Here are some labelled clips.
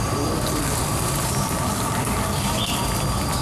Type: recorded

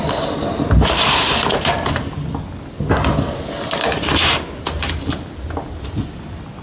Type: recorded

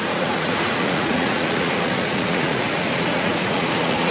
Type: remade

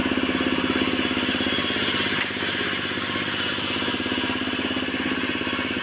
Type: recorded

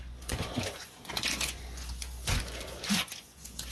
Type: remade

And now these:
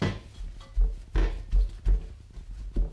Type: recorded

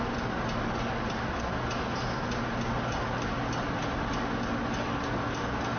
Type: recorded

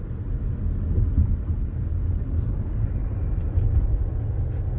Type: recorded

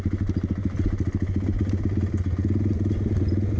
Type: recorded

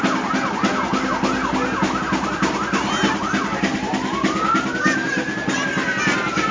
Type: recorded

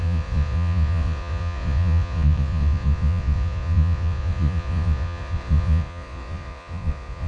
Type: remade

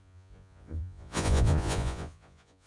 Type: remade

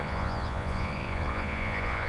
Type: remade